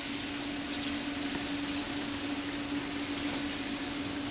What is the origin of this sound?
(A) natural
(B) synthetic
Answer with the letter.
A